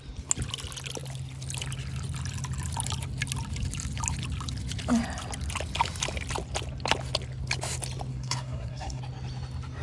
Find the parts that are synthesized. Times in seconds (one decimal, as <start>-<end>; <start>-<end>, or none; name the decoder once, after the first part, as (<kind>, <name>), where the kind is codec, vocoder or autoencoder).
8.1-9.0 (codec, SNAC)

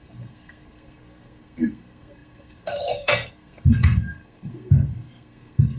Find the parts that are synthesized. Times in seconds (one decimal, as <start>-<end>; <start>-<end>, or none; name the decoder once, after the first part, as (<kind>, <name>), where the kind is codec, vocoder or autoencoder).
0.0-5.8 (codec, SNAC)

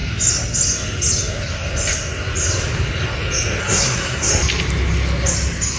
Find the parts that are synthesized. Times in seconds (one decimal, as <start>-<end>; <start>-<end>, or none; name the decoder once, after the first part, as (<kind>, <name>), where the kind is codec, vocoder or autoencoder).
3.6-4.3 (codec, SNAC)

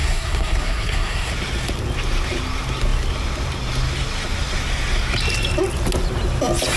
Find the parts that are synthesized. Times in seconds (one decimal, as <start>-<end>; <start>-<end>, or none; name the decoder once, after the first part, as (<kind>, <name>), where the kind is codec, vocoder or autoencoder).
0.0-1.3 (codec, SNAC)

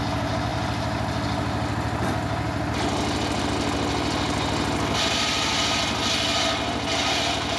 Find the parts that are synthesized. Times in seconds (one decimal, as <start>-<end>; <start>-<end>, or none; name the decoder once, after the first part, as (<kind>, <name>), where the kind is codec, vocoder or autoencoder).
none

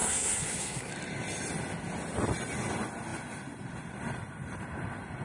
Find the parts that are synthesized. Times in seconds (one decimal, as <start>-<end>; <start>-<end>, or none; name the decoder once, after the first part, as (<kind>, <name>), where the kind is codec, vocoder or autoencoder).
0.0-0.9 (codec, SNAC)